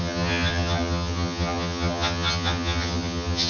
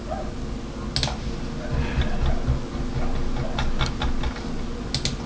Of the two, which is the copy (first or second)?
first